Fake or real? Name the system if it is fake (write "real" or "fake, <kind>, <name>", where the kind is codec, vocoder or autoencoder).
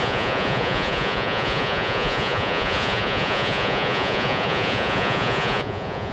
fake, vocoder, Vocos